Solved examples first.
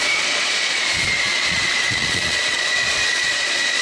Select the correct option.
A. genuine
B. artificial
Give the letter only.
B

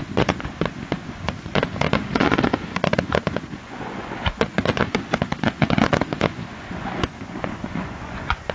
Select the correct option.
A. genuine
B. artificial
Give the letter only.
B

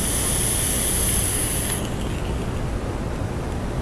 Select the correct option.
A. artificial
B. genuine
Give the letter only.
B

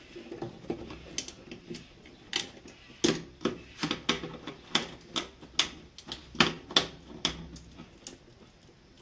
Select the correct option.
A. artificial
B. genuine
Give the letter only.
B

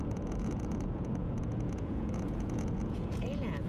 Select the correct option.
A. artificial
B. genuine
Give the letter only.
A